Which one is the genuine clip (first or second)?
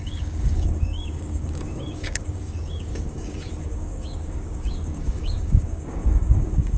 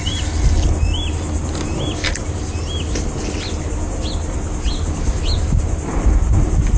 second